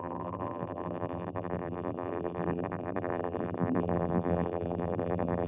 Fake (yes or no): yes